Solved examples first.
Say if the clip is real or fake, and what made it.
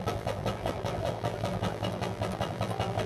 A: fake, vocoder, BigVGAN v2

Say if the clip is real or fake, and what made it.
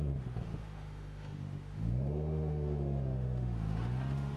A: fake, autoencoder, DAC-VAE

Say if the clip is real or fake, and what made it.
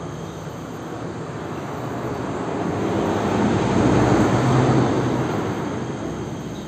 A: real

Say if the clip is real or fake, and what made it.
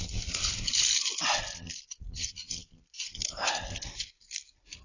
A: real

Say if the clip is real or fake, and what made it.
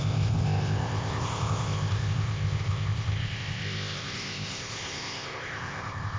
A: fake, codec, ZipCodec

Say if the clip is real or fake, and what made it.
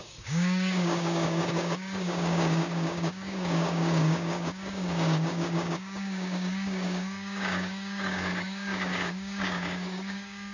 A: fake, codec, DAC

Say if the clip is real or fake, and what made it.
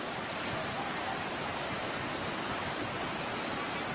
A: real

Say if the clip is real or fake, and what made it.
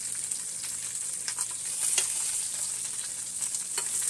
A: real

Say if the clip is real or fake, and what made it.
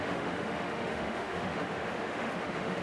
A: fake, autoencoder, DAC-VAE